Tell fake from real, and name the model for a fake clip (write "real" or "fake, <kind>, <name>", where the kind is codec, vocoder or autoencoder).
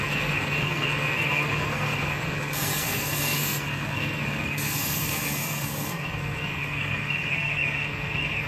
fake, codec, SNAC